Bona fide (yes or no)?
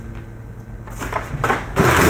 yes